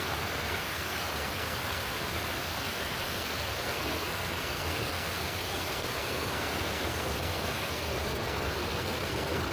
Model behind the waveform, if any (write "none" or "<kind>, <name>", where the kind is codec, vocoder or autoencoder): codec, SNAC